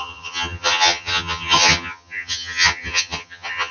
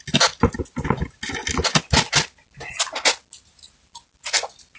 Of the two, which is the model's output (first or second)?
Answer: first